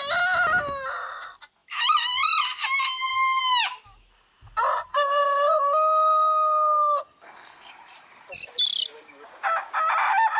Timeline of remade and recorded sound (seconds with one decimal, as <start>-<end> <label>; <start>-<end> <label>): 0.0-4.9 recorded; 4.9-7.7 remade; 7.7-10.4 recorded